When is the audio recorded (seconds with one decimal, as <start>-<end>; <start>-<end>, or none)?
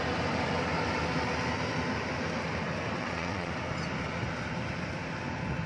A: 0.0-3.0; 3.5-5.7